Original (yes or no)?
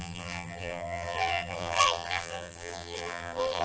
no